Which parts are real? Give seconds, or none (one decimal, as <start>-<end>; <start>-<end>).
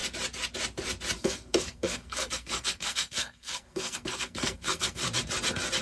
0.0-1.2; 5.0-5.8